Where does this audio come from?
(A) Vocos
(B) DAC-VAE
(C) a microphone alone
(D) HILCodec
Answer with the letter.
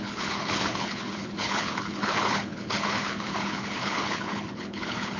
D